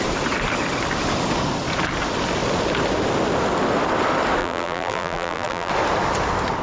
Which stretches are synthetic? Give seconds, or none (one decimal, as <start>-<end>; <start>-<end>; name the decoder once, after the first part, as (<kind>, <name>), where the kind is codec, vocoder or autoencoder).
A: 4.4-5.7 (vocoder, BigVGAN v2)